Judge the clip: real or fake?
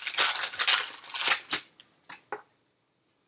real